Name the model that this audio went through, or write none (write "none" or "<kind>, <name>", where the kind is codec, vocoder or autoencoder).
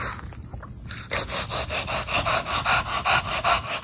none